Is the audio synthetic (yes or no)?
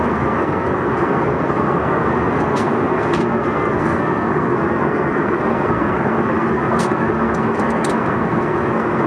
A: yes